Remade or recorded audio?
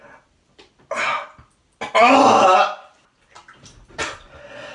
recorded